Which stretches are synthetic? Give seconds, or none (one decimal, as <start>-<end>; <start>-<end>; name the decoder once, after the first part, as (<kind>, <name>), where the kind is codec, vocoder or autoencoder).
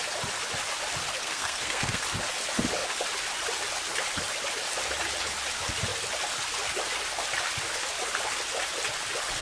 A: 1.1-2.0 (codec, SNAC)